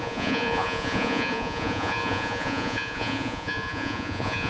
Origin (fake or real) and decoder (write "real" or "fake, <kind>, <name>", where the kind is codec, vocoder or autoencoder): fake, vocoder, Vocos